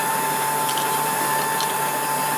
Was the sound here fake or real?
fake